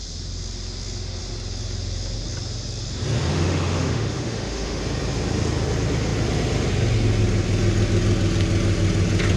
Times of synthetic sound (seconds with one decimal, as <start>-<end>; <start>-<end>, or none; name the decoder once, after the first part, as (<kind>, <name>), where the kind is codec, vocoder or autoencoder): 3.3-4.8 (autoencoder, DAC-VAE)